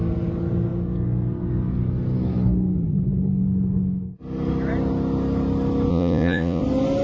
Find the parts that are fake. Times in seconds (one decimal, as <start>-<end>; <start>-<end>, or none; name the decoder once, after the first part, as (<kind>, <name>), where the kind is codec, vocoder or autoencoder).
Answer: 5.9-6.6 (vocoder, Vocos)